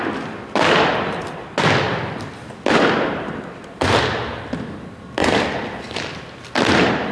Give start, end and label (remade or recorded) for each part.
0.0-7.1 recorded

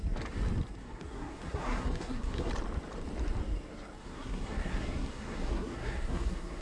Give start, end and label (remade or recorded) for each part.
0.0-0.8 recorded; 0.8-2.5 remade; 2.5-4.0 recorded; 4.0-6.6 remade

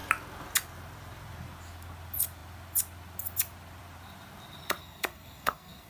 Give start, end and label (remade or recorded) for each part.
0.0-4.8 recorded; 4.8-5.9 remade

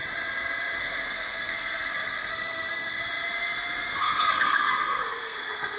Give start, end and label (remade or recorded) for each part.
0.0-0.8 recorded; 0.8-3.0 remade; 3.0-4.3 recorded; 4.3-5.8 remade

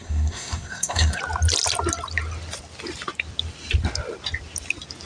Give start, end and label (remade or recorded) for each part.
0.0-1.2 remade; 1.2-5.1 recorded